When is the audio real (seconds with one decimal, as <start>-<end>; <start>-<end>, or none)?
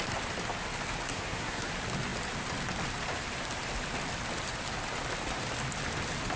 0.0-1.1; 1.7-6.4